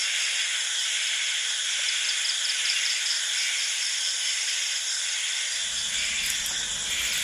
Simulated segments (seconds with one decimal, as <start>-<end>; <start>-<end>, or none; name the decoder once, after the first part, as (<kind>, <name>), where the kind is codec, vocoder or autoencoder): 0.0-4.3 (vocoder, BigVGAN v2)